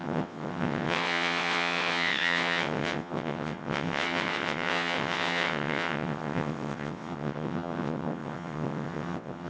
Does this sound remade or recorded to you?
remade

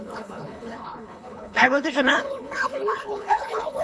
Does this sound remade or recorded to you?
remade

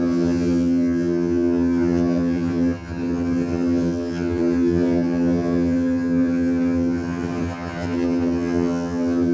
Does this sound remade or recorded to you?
remade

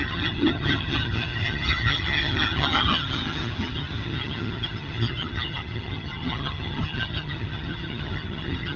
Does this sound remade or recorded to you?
remade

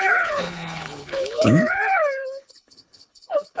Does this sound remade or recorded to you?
remade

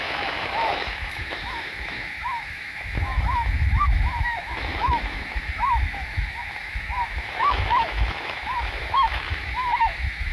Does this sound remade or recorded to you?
remade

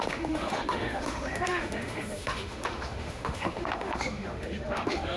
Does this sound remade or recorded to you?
remade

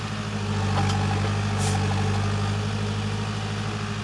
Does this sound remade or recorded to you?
recorded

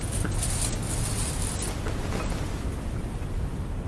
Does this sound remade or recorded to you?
recorded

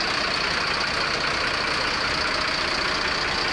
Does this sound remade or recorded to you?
recorded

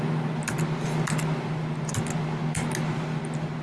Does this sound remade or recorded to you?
recorded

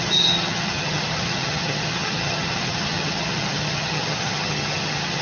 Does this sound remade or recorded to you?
remade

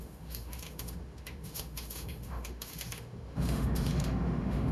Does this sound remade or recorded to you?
remade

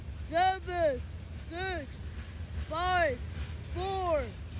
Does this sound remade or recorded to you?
recorded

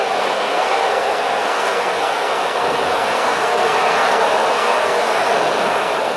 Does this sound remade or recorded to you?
remade